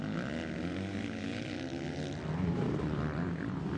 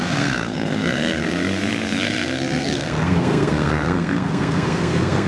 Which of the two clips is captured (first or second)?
first